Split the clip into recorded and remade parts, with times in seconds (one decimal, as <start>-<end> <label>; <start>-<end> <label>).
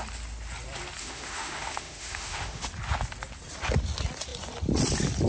0.0-1.0 recorded; 1.0-2.6 remade; 2.6-5.3 recorded